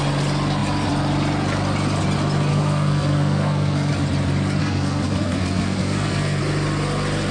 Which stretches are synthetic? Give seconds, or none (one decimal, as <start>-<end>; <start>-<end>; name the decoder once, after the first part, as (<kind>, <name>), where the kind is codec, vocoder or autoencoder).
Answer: 2.5-3.9 (codec, SNAC); 4.6-6.4